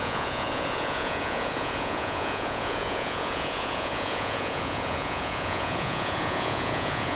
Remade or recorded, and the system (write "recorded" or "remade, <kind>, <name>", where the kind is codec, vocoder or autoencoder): remade, vocoder, Vocos